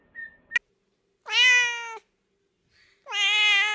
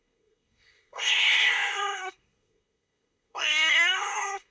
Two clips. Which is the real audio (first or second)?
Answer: first